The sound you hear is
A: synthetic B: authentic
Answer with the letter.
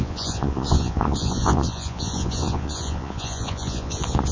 A